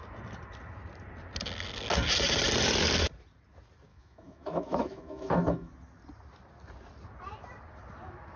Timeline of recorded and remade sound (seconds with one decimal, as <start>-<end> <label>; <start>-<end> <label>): 0.0-3.9 recorded; 3.9-5.7 remade; 5.7-8.4 recorded